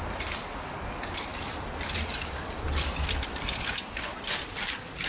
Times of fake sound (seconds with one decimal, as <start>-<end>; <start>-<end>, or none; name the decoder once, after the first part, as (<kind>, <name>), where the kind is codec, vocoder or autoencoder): 1.3-4.4 (vocoder, BigVGAN v2)